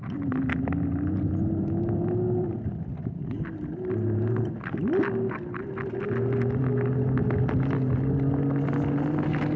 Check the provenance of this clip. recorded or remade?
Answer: recorded